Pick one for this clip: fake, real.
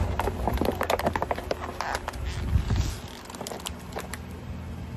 real